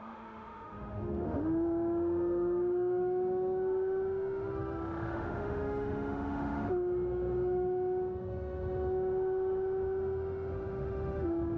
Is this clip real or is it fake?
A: fake